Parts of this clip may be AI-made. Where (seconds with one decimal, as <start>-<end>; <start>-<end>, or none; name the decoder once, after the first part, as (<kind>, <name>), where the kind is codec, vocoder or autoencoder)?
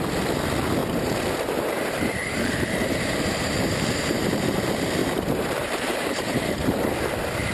0.8-4.6 (vocoder, BigVGAN v2); 5.0-6.9